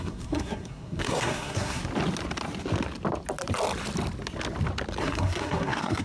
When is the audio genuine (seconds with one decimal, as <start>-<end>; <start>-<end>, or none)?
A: 1.8-5.0